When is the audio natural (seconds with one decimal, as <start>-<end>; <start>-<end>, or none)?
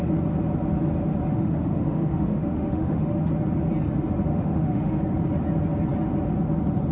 0.0-1.3; 3.3-4.3; 5.0-6.9